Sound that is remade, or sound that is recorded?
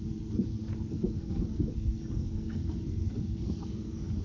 remade